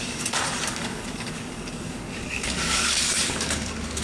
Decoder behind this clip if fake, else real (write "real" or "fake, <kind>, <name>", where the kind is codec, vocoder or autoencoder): fake, codec, DAC